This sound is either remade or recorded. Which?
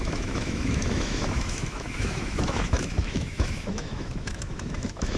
remade